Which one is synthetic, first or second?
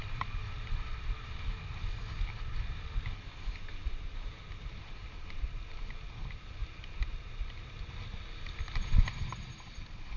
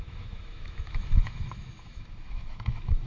second